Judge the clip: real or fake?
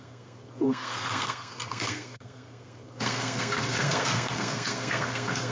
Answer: fake